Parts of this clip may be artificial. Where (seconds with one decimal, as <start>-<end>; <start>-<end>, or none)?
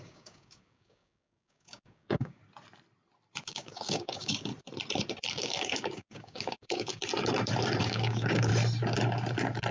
0.0-2.4; 3.4-4.5; 5.3-7.0; 7.8-8.5